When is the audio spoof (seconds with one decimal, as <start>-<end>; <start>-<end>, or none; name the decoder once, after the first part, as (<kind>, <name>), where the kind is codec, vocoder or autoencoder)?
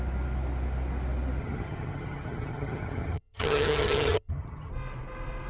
1.4-4.7 (vocoder, HiFi-GAN)